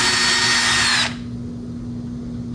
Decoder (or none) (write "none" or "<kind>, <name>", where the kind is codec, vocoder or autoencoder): none